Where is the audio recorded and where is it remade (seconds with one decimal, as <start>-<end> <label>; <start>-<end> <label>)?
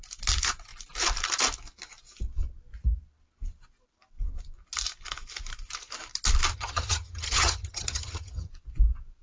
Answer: 0.0-6.5 recorded; 6.5-8.5 remade; 8.5-9.2 recorded